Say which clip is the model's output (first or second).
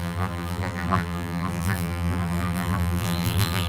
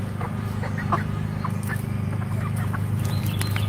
first